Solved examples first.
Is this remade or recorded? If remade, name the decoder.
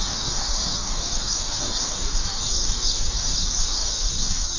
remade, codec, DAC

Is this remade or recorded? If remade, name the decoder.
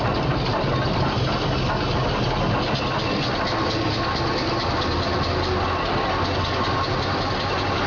recorded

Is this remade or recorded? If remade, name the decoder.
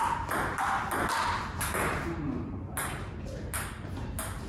recorded